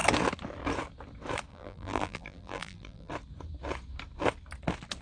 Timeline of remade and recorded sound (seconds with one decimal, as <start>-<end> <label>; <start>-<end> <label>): 0.0-1.5 recorded; 1.5-3.1 remade; 3.1-5.0 recorded